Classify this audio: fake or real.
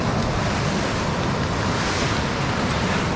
real